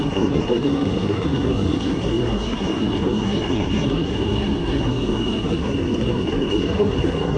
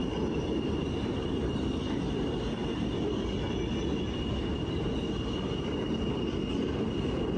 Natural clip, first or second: second